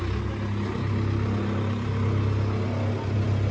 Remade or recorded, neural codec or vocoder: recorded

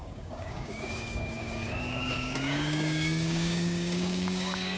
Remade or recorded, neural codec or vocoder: remade, codec, DAC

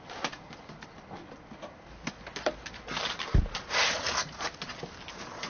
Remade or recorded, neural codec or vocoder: recorded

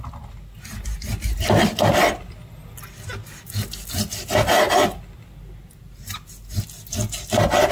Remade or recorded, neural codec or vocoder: recorded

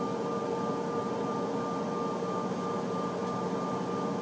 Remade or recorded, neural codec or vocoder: recorded